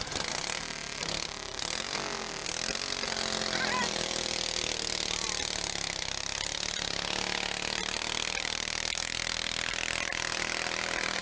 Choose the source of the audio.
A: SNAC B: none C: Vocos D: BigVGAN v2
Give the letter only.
B